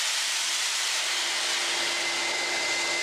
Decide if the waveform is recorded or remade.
recorded